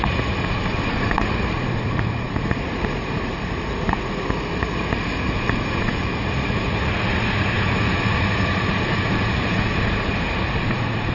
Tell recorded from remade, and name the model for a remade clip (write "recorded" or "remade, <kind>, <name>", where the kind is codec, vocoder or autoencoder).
remade, vocoder, Vocos